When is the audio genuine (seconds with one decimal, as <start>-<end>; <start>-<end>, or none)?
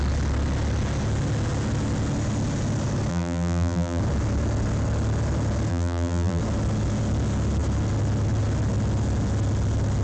0.0-3.1; 4.0-5.7; 6.4-10.0